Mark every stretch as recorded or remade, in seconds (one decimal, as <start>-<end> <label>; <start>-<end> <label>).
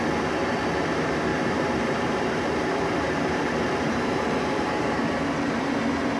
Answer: 0.0-1.3 recorded; 1.3-5.0 remade; 5.0-6.2 recorded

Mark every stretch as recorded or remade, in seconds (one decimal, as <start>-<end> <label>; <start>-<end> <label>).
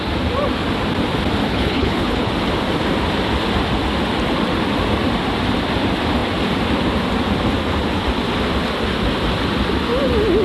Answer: 0.0-1.5 recorded; 1.5-2.3 remade; 2.3-10.4 recorded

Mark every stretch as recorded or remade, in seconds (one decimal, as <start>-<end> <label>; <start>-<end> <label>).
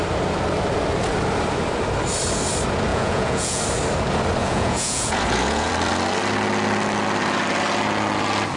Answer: 0.0-2.9 recorded; 2.9-3.6 remade; 3.6-4.4 recorded; 4.4-5.7 remade; 5.7-8.6 recorded